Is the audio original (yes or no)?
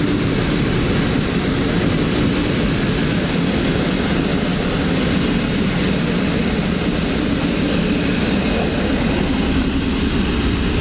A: yes